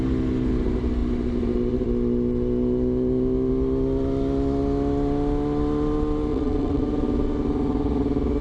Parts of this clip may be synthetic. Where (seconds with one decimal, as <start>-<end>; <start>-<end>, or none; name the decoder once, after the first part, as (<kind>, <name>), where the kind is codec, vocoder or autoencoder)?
6.3-6.8 (vocoder, WaveNeXt)